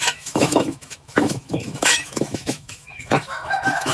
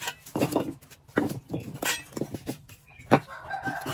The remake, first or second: first